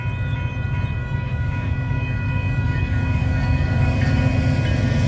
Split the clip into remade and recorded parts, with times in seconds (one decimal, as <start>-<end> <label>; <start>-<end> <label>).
0.0-1.0 recorded; 1.0-4.1 remade; 4.1-5.1 recorded